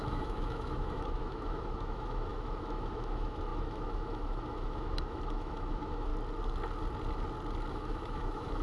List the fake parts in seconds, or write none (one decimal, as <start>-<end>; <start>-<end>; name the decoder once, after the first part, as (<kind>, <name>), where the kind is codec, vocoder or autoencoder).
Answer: 0.0-6.1 (autoencoder, DAC-VAE); 7.7-8.6